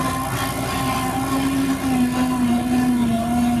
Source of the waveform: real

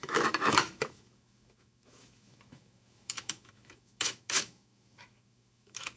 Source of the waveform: fake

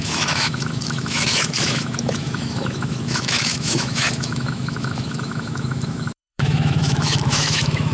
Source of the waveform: fake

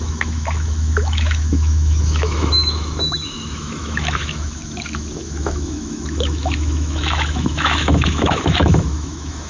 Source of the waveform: fake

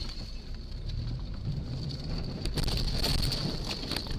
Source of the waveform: real